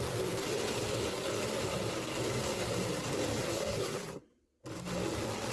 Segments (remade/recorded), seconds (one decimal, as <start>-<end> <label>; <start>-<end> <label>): 0.0-3.4 recorded; 3.4-4.2 remade; 4.2-5.5 recorded